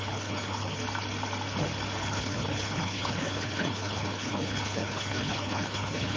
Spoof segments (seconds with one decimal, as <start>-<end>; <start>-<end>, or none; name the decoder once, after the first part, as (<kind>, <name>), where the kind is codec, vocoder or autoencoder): 0.0-0.8 (codec, HILCodec); 2.0-6.2